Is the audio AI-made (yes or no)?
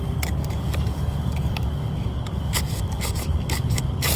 yes